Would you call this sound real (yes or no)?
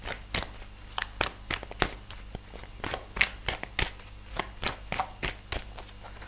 yes